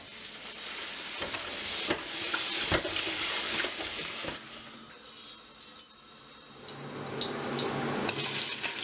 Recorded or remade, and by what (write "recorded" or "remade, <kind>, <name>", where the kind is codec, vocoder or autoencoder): recorded